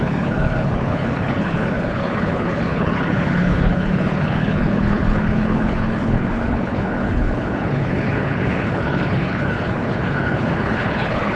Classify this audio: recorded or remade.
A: remade